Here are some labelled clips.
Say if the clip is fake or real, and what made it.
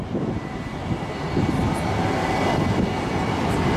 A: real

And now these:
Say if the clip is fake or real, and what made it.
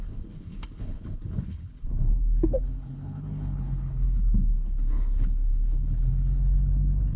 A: fake, codec, HILCodec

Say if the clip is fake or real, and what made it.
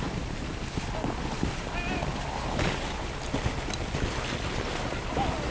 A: real